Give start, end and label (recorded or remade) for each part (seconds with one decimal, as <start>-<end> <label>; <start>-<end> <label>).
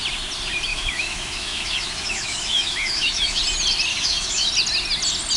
0.0-0.7 recorded; 0.7-3.4 remade; 3.4-3.9 recorded; 3.9-4.5 remade; 4.5-5.4 recorded